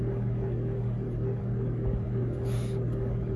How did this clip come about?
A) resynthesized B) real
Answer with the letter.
A